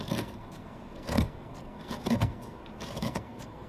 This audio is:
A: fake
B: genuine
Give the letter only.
A